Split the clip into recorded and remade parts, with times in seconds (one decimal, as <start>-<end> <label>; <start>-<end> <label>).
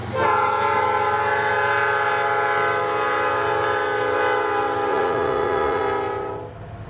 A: 0.0-4.9 recorded; 4.9-5.8 remade; 5.8-6.9 recorded